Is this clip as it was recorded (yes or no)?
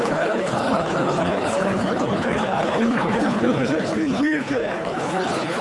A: no